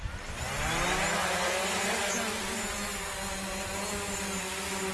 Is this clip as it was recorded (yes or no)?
yes